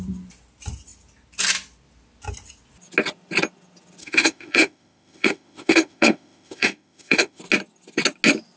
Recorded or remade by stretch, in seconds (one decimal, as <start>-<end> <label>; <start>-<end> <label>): 0.0-4.0 recorded; 4.0-7.4 remade; 7.4-8.6 recorded